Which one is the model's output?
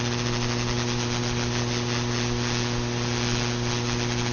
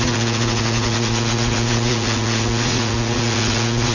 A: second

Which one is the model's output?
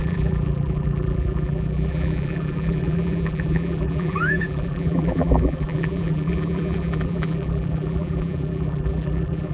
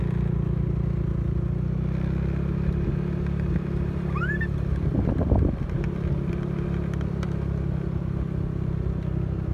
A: first